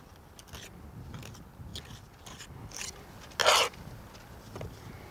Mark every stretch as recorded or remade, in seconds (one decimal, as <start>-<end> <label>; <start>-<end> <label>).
0.0-5.1 recorded